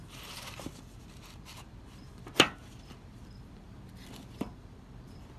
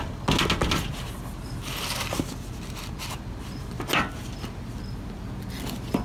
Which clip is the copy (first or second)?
first